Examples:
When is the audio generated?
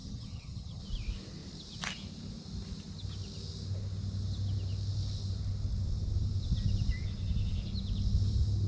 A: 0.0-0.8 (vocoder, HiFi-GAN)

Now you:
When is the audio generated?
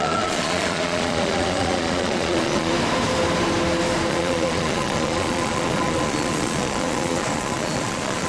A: 0.0-2.7 (vocoder, Vocos); 4.1-8.3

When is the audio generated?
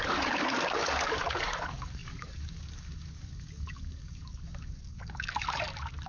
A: 0.0-6.1 (codec, DAC)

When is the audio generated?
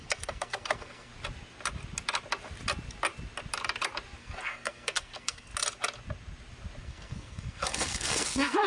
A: 0.0-1.1 (codec, SNAC); 4.2-5.5; 6.8-8.7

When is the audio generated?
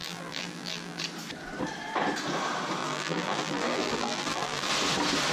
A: 0.0-1.0 (vocoder, BigVGAN v2); 2.8-4.7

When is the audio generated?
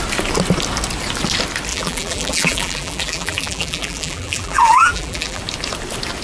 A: 1.7-5.4 (vocoder, BigVGAN v2)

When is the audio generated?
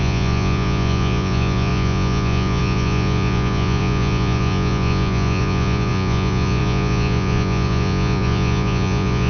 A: 0.0-9.3 (vocoder, Vocos)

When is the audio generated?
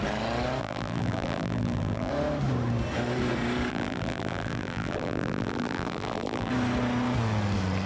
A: 0.6-2.1 (vocoder, BigVGAN v2); 3.7-6.5